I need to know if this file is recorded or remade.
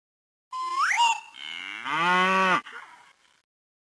recorded